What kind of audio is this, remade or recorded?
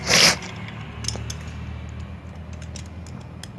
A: recorded